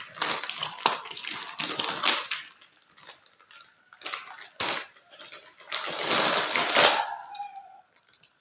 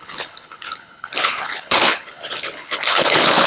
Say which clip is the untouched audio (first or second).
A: first